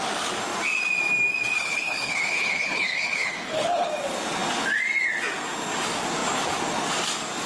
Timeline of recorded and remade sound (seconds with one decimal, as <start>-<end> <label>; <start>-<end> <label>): 0.0-1.6 recorded; 1.6-3.9 remade; 3.9-7.5 recorded